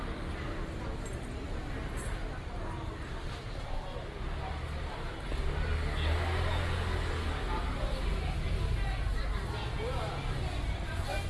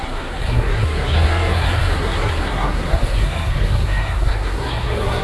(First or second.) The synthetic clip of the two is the second